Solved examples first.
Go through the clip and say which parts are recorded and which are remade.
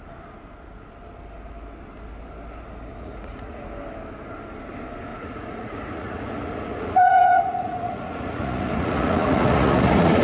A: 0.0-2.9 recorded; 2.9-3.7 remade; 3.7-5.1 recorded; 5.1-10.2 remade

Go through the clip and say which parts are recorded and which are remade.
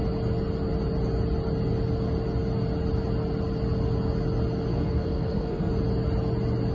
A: 0.0-4.7 recorded; 4.7-5.7 remade; 5.7-6.7 recorded